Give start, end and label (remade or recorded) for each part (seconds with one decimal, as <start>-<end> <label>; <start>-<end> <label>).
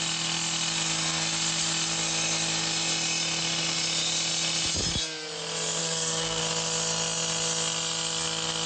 0.0-5.8 recorded; 5.8-6.4 remade; 6.4-8.7 recorded